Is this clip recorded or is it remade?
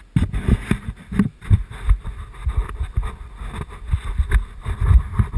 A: recorded